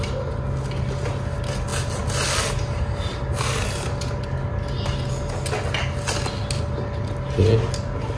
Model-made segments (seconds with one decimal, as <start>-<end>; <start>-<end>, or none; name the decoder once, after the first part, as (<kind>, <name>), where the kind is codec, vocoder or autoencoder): none